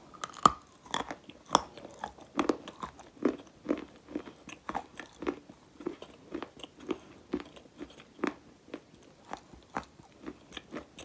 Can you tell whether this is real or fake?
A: real